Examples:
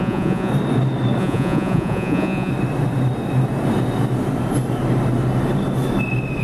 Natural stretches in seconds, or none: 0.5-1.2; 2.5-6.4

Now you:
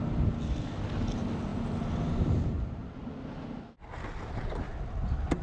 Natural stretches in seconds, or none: 0.0-5.4

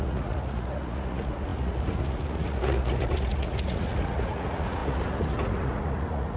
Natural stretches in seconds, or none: none

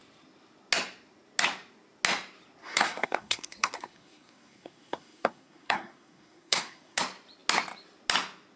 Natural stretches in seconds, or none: 0.0-2.6; 7.0-8.6

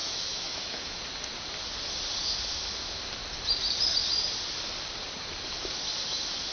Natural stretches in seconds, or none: 1.0-6.5